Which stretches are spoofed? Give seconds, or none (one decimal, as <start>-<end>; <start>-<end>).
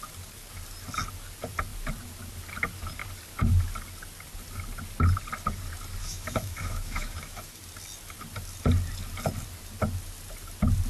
6.0-7.6